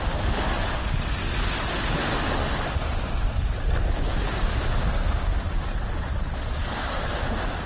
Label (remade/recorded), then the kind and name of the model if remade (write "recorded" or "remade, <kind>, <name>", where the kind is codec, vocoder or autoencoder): recorded